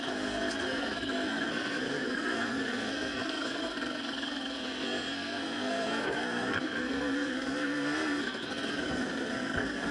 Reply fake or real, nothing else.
fake